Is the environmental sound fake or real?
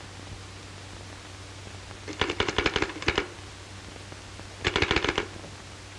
real